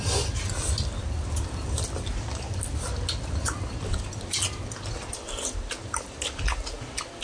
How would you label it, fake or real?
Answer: real